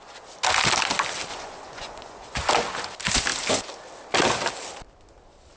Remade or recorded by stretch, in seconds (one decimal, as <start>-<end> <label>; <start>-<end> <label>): 0.0-1.3 recorded; 1.3-2.5 remade; 2.5-5.6 recorded